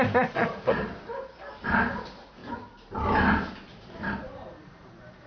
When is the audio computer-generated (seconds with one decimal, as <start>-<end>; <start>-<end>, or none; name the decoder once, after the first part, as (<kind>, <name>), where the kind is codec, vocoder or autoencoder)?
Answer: 0.0-2.4 (vocoder, BigVGAN v2); 3.9-5.3